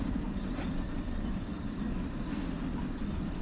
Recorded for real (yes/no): yes